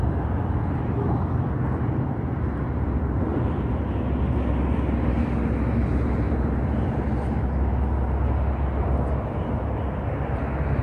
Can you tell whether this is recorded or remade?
recorded